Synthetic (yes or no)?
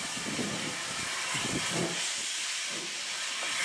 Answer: no